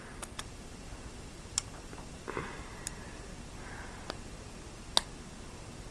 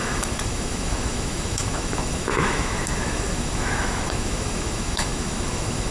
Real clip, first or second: first